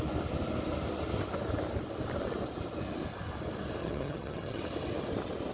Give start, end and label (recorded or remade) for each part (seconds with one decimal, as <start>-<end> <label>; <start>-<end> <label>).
0.0-3.8 recorded; 3.8-4.6 remade; 4.6-5.5 recorded